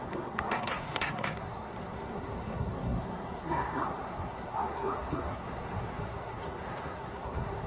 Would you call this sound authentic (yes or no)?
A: no